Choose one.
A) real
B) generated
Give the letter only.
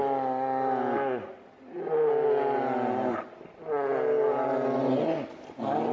A